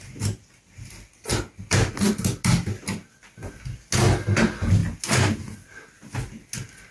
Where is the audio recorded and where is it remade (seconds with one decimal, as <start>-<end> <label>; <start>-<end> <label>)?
0.0-6.9 recorded